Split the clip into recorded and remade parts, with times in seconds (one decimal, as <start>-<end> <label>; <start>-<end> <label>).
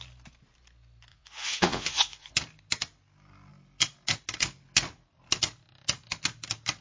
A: 0.0-1.1 recorded; 1.1-2.3 remade; 2.3-6.8 recorded